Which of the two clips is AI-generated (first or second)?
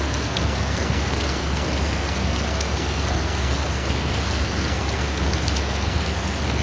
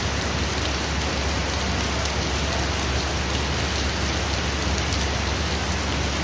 first